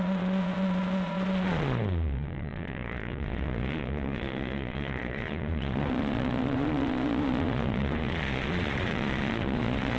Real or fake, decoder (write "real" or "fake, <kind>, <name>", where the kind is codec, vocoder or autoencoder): fake, vocoder, Vocos